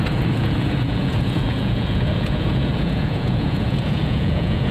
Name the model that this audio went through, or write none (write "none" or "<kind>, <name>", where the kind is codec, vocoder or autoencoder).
vocoder, Vocos